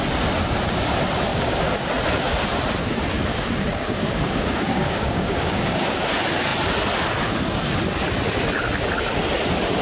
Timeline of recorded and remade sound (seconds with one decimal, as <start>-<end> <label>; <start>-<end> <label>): 0.0-1.3 recorded; 1.3-1.9 remade; 1.9-3.3 recorded; 3.3-6.0 remade; 6.0-9.8 recorded